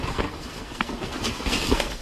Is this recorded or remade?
remade